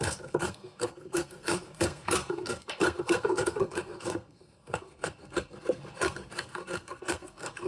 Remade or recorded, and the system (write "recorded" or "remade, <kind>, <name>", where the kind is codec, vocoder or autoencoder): remade, codec, SNAC